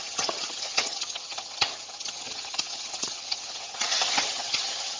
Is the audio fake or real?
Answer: fake